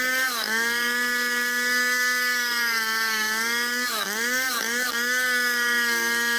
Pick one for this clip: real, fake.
fake